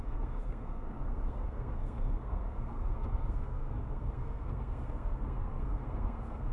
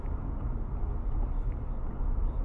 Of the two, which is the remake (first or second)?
first